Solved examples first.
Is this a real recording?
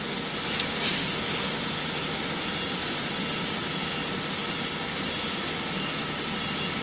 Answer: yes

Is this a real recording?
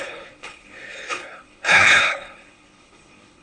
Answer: no